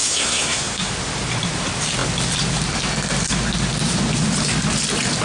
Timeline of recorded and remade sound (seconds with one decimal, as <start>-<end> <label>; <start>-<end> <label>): 0.0-0.9 remade; 0.9-5.2 recorded